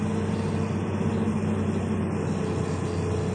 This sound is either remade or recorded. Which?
recorded